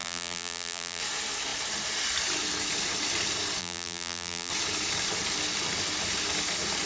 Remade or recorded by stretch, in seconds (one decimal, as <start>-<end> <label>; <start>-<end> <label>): 0.0-1.0 remade; 1.0-3.6 recorded; 3.6-4.5 remade; 4.5-6.9 recorded